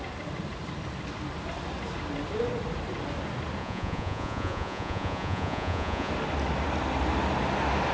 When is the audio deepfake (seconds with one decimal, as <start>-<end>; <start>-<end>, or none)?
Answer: 3.6-6.1